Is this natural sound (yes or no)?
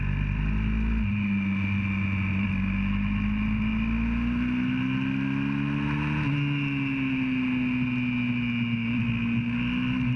yes